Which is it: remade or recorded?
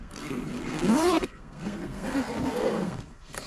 remade